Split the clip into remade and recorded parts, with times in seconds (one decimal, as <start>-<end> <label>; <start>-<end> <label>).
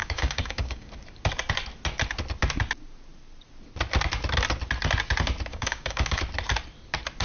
0.0-0.9 remade; 0.9-5.5 recorded; 5.5-6.2 remade; 6.2-7.2 recorded